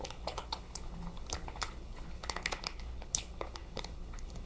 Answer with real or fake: fake